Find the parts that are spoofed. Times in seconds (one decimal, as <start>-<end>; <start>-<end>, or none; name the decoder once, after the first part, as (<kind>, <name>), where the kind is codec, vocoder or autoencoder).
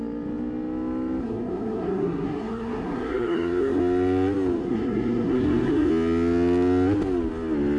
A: 1.2-3.8 (codec, SNAC); 4.6-5.9